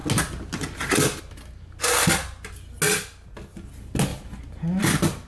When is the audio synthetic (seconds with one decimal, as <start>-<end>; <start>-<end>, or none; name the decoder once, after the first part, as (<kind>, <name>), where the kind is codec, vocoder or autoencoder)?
none